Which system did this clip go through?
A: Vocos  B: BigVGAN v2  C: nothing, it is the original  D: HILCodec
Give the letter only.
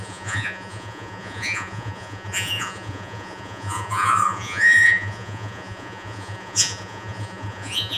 A